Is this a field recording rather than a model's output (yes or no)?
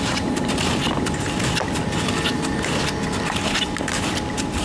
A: no